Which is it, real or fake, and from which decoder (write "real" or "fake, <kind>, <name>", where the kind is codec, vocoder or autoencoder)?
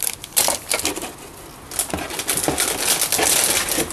real